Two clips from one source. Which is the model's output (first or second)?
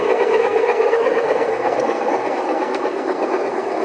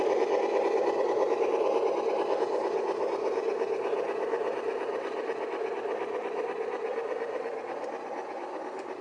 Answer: first